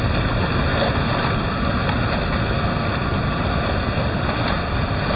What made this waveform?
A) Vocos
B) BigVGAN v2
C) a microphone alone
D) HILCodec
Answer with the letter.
C